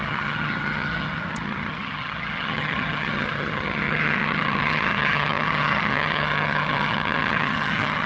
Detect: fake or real fake